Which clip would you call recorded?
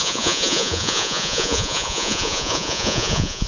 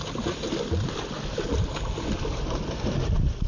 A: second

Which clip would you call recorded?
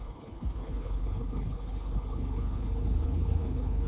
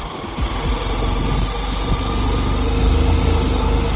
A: second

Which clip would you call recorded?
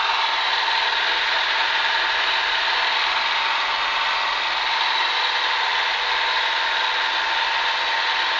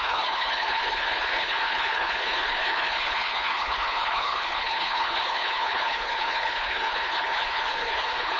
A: first